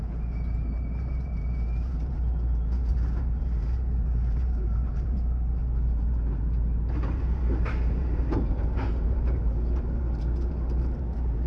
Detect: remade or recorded remade